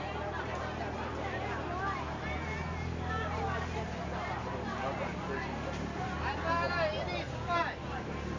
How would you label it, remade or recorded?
recorded